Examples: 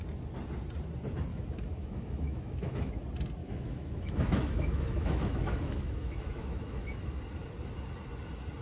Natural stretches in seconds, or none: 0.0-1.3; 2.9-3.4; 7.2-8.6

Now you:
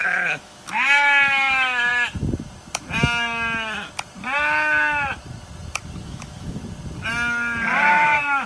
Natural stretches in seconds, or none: 1.9-6.0; 6.6-7.9

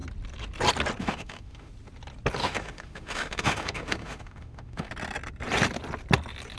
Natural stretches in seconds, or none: 0.0-1.0; 1.7-2.4; 4.9-6.6